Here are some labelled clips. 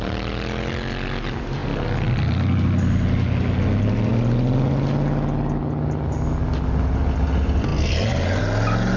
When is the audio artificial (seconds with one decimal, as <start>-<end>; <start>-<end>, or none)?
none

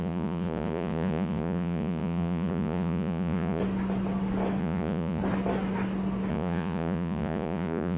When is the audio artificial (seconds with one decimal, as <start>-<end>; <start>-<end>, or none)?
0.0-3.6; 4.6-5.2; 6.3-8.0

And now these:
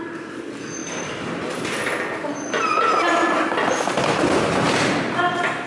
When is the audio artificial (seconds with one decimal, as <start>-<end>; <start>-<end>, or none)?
none